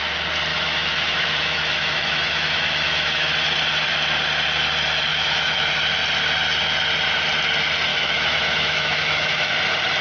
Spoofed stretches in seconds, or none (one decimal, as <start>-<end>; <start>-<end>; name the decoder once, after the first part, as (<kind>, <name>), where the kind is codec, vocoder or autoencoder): 0.5-3.3 (autoencoder, DAC-VAE); 5.1-5.7; 7.9-9.5